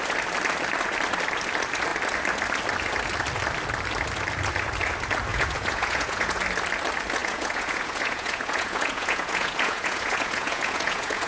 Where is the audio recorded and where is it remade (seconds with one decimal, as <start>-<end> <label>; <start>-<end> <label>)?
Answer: 0.0-5.3 recorded; 5.3-6.4 remade; 6.4-7.2 recorded; 7.2-11.3 remade